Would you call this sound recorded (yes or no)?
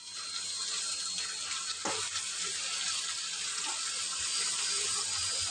yes